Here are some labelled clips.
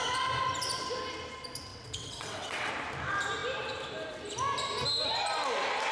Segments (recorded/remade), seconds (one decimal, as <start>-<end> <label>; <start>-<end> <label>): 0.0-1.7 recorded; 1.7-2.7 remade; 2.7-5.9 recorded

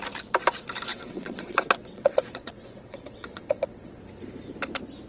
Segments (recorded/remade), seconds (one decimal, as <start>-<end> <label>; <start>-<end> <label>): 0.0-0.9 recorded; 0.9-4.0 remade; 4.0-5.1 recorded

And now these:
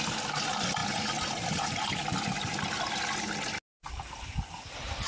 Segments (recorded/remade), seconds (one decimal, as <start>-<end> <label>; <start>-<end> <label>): 0.0-5.1 recorded

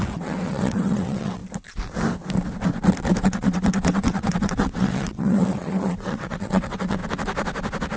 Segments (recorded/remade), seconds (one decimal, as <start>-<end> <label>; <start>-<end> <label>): 0.0-1.4 remade; 1.4-3.2 recorded; 3.2-7.0 remade; 7.0-8.0 recorded

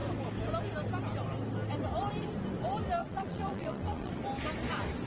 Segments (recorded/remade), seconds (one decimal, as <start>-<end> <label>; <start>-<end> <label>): 0.0-3.0 recorded; 3.0-4.1 remade; 4.1-5.1 recorded